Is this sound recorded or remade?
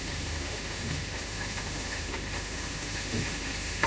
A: remade